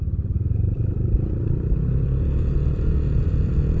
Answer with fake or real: fake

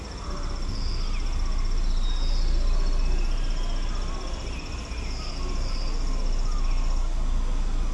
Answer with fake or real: real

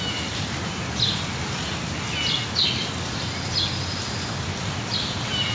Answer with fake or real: real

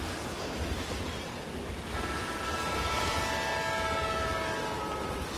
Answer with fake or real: real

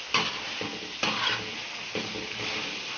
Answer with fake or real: real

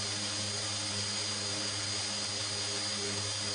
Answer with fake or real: real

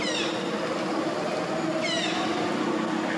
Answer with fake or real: real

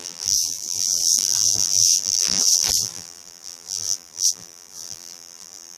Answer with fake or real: fake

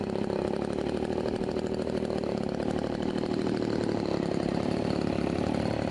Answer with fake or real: fake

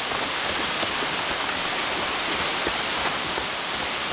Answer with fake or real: real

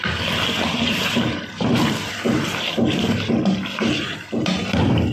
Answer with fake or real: fake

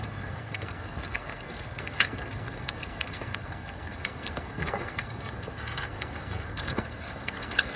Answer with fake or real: fake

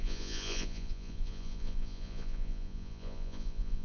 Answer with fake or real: fake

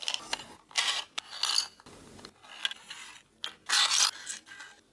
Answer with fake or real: real